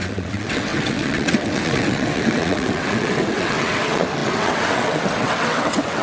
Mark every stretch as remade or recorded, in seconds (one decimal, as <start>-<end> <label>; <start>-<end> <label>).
0.0-6.0 remade

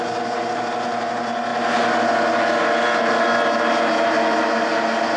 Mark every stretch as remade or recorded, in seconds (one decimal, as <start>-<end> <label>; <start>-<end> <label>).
0.0-5.2 recorded

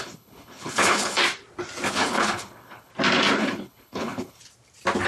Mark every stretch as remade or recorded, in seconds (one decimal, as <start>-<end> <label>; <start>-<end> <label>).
0.0-1.2 remade; 1.2-1.9 recorded; 1.9-2.9 remade; 2.9-3.4 recorded; 3.4-4.4 remade; 4.4-5.1 recorded

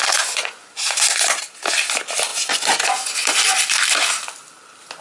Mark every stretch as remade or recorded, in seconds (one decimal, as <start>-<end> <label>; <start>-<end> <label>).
0.0-0.7 remade; 0.7-2.3 recorded; 2.3-3.4 remade; 3.4-5.0 recorded

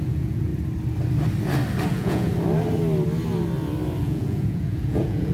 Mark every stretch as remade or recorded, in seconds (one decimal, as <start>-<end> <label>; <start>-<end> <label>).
0.0-0.5 remade; 0.5-1.9 recorded; 1.9-2.3 remade; 2.3-4.0 recorded; 4.0-5.3 remade

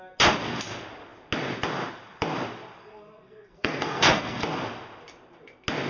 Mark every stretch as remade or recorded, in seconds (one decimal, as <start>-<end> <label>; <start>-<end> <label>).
0.0-2.8 recorded; 2.8-4.4 remade; 4.4-5.9 recorded

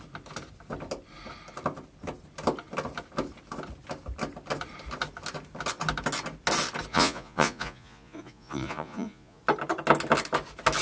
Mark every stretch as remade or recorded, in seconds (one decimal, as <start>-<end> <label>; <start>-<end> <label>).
0.0-6.9 recorded; 6.9-9.4 remade; 9.4-10.8 recorded

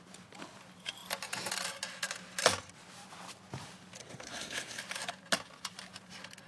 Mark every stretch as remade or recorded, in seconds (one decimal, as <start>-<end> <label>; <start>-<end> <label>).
0.0-4.0 recorded; 4.0-4.8 remade; 4.8-6.5 recorded